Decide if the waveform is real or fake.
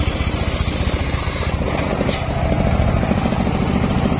real